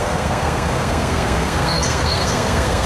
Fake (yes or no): yes